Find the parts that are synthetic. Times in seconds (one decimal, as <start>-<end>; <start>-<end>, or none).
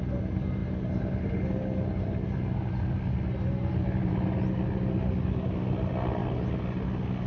none